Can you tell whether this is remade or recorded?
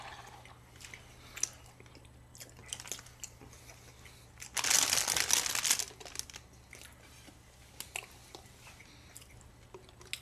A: recorded